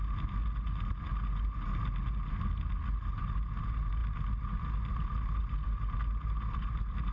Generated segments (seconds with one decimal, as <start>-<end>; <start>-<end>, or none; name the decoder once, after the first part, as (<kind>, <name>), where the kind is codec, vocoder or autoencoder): none